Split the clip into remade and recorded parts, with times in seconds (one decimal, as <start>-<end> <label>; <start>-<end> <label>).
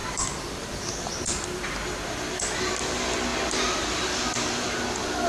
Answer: 0.0-1.6 remade; 1.6-5.3 recorded